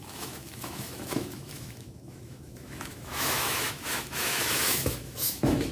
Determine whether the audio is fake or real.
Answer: fake